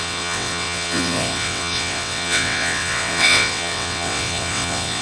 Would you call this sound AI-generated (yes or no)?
yes